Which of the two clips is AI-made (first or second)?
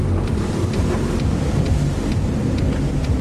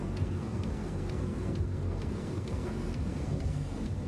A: second